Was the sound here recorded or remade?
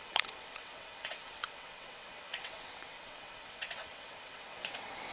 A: remade